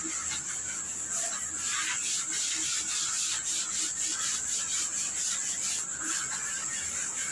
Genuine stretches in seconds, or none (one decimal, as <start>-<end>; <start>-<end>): 0.0-7.3